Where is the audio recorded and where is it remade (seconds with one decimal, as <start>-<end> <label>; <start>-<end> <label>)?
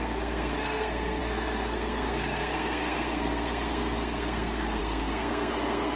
0.0-6.0 remade